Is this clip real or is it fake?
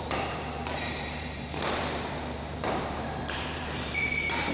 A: fake